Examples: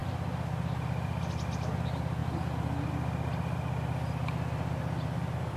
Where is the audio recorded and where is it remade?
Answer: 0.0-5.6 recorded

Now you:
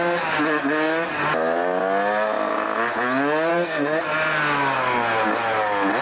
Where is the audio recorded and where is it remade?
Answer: 0.0-3.5 recorded; 3.5-4.0 remade; 4.0-6.0 recorded

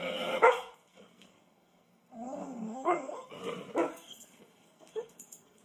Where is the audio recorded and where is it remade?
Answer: 0.0-3.4 remade; 3.4-3.9 recorded; 3.9-5.6 remade

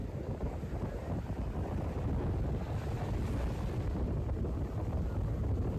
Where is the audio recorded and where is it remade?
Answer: 0.0-5.8 recorded

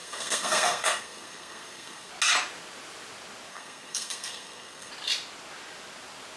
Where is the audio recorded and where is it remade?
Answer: 0.0-2.1 remade; 2.1-3.5 recorded; 3.5-4.9 remade; 4.9-6.4 recorded

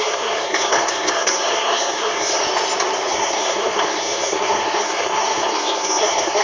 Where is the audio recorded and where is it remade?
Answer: 0.0-2.4 remade; 2.4-3.1 recorded; 3.1-6.4 remade